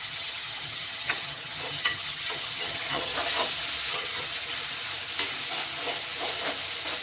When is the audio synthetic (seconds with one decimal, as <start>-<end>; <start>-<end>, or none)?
0.0-3.1; 3.9-4.3